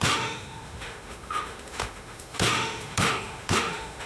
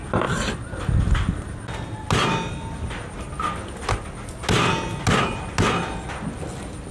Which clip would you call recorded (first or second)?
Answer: second